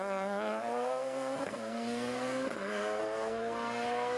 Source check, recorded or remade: remade